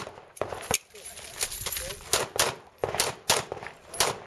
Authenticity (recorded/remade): recorded